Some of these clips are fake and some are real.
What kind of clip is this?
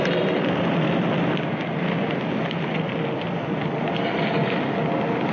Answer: real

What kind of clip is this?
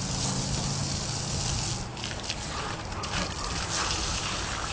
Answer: real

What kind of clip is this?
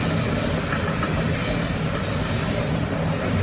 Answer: real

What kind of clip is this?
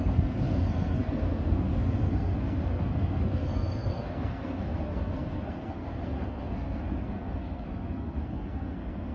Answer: fake